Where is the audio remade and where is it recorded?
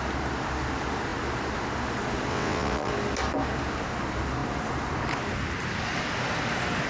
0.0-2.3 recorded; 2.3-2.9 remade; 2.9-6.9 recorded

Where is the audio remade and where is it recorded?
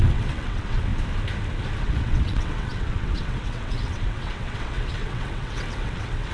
0.0-0.9 remade; 0.9-1.8 recorded; 1.8-6.3 remade